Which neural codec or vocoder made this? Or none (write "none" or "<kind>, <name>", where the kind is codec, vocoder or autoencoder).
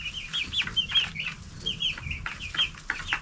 none